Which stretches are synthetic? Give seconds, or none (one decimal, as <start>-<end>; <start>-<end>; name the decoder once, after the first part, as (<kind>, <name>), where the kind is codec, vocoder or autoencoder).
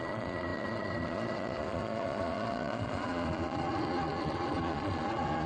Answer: 0.0-5.5 (vocoder, Vocos)